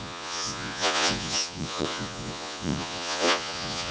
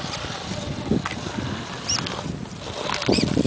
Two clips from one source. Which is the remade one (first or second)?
first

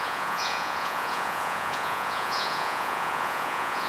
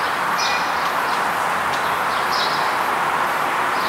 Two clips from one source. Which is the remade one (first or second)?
first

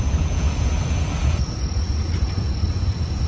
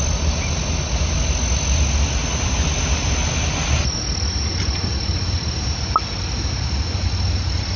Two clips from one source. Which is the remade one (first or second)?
first